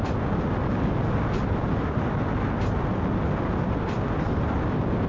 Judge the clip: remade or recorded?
recorded